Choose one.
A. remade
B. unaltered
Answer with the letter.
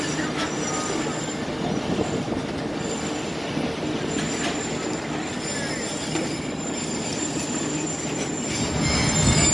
B